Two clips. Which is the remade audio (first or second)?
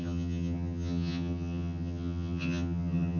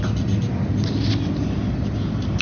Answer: first